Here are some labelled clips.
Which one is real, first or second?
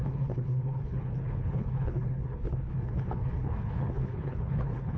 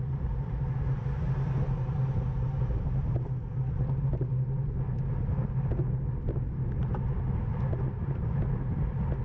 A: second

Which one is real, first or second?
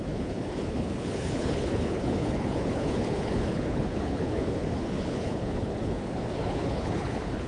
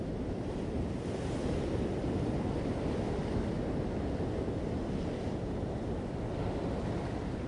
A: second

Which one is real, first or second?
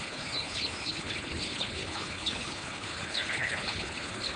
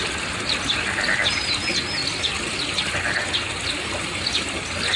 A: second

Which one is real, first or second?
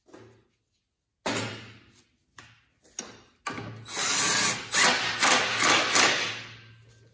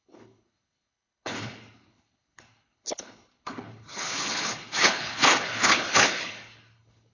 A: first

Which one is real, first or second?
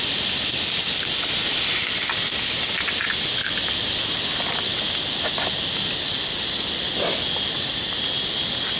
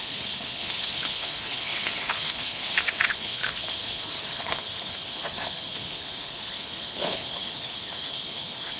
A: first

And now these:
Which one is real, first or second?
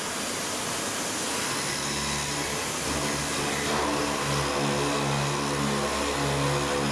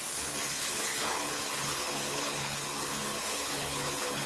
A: first